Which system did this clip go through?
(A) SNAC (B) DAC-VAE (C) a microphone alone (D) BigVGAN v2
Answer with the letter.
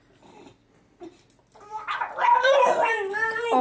C